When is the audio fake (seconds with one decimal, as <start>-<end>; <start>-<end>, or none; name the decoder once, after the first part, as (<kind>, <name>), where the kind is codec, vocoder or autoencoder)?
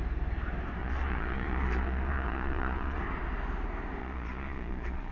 0.8-3.0 (vocoder, Vocos); 4.0-5.1